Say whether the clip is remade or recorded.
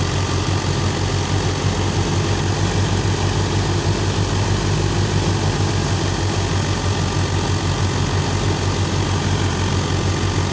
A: recorded